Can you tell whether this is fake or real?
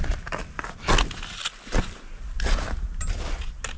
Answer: real